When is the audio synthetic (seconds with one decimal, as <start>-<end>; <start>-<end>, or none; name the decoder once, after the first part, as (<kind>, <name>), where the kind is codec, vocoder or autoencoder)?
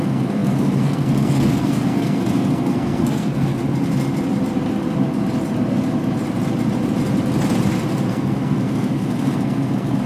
0.0-3.6 (codec, SNAC); 8.1-10.1